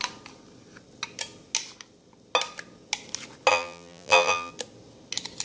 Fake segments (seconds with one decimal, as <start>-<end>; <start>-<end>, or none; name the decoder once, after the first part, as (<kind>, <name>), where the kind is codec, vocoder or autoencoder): 3.5-4.5 (vocoder, BigVGAN v2)